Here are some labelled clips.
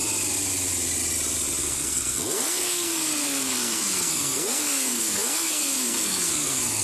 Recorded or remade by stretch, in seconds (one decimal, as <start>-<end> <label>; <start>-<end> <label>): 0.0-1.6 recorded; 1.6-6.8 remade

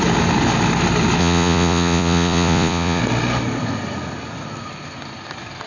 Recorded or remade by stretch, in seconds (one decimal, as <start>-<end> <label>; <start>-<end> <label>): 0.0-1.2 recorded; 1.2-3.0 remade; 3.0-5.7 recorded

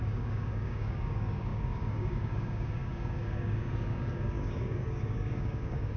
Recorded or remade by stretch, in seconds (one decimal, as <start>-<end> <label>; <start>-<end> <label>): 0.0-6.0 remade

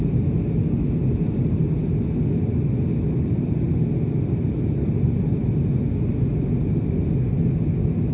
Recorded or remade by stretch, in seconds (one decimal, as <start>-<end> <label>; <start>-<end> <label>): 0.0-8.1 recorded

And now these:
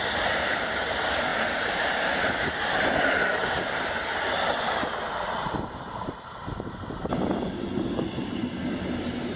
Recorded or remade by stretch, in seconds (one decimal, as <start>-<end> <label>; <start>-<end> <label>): 0.0-1.3 recorded; 1.3-2.6 remade; 2.6-9.4 recorded

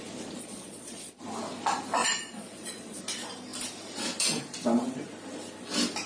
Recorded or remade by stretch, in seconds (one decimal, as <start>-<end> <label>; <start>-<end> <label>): 0.0-0.4 recorded; 0.4-1.2 remade; 1.2-2.0 recorded; 2.0-3.0 remade; 3.0-6.1 recorded